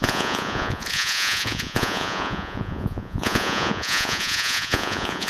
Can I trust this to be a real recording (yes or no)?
no